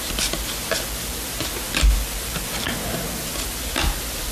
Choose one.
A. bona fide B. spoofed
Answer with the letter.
A